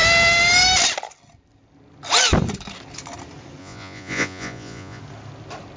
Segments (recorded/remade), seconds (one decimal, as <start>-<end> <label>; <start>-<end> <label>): 0.0-3.6 recorded; 3.6-5.0 remade; 5.0-5.8 recorded